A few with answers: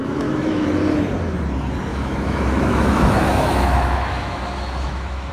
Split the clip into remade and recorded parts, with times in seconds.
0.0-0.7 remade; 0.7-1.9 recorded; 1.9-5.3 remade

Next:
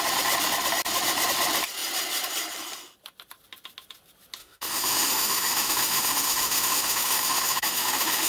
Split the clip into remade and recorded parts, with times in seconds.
0.0-4.4 recorded; 4.4-8.3 remade

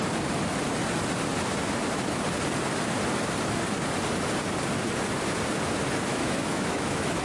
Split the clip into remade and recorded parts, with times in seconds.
0.0-6.1 recorded; 6.1-7.2 remade